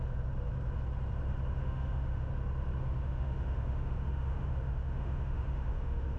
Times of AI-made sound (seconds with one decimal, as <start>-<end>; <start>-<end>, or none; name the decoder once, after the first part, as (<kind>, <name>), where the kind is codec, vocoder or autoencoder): 1.6-2.3 (autoencoder, DAC-VAE); 2.8-6.2

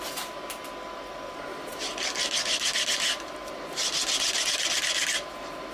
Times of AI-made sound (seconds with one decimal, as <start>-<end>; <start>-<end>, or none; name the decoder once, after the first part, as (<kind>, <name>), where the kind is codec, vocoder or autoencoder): none

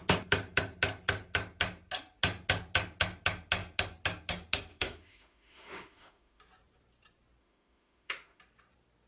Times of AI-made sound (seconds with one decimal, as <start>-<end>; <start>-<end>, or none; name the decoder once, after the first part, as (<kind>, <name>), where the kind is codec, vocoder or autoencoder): 4.7-6.4 (autoencoder, DAC-VAE); 7.4-8.4

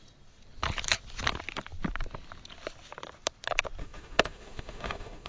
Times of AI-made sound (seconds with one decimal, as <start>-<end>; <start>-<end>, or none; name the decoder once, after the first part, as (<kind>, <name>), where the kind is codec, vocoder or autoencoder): 3.8-5.3 (autoencoder, DAC-VAE)

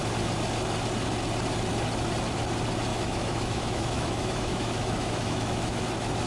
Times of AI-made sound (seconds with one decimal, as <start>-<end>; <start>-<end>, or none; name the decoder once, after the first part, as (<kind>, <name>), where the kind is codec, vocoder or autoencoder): 2.9-5.8 (autoencoder, DAC-VAE)